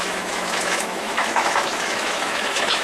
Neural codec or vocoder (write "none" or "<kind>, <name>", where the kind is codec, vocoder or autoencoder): autoencoder, DAC-VAE